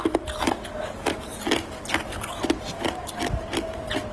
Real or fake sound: real